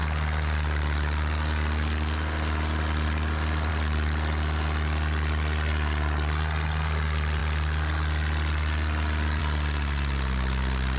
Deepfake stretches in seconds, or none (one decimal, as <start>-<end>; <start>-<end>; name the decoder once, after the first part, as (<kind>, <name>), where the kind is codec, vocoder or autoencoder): none